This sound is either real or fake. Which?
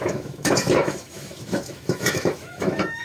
fake